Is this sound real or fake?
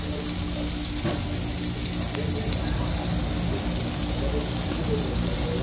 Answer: real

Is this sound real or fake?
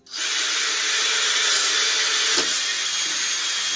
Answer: real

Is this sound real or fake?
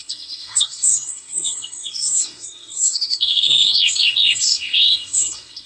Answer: fake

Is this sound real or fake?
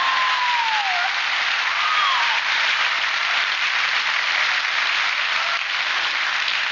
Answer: real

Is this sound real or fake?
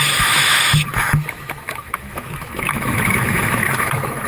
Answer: fake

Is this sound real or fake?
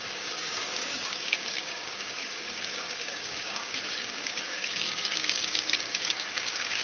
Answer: fake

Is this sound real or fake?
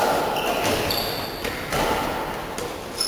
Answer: real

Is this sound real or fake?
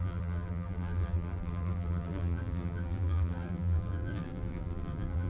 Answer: fake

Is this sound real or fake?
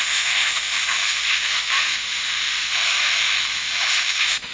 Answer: fake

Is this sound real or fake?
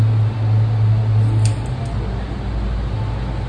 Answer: real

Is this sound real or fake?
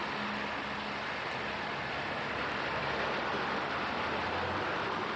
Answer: real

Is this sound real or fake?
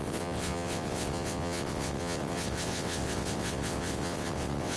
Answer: fake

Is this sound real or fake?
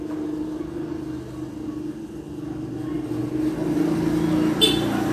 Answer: real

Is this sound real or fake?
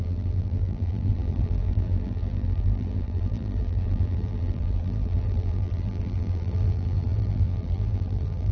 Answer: fake